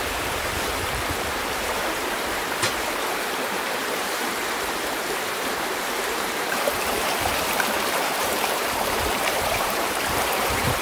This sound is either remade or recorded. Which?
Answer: remade